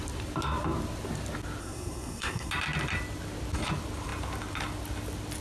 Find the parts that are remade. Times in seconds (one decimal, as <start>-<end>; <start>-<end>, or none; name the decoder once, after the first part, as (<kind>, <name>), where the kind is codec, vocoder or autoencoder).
1.6-2.5 (codec, SNAC)